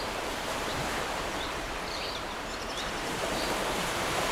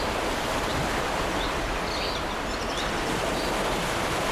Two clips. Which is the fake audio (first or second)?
first